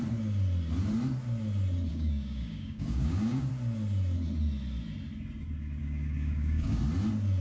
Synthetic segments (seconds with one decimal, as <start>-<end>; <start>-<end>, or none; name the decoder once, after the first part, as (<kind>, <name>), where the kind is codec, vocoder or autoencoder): 1.9-3.5 (codec, DAC); 5.8-6.8